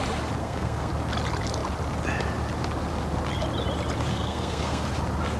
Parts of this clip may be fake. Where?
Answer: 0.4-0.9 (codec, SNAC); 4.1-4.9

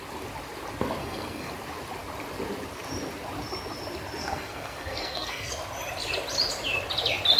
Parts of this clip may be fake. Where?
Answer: 1.0-1.5 (codec, SNAC); 4.2-5.5

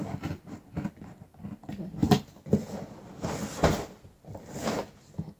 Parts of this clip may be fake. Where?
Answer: none

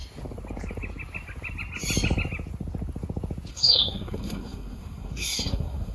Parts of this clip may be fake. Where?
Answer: 3.5-5.9 (codec, SNAC)